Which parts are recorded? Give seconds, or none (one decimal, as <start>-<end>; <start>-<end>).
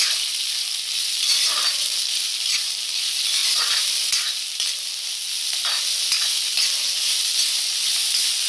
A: 0.0-3.4; 4.9-8.5